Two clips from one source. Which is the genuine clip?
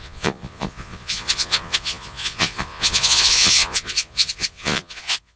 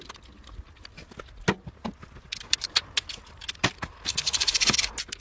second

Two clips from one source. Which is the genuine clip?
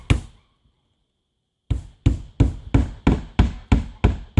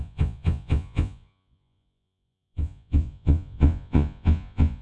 first